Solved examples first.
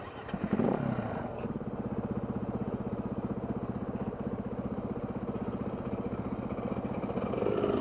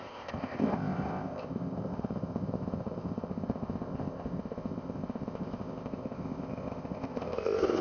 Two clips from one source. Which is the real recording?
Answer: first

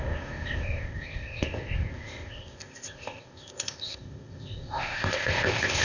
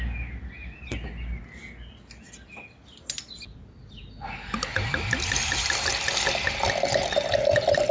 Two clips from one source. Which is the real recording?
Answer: second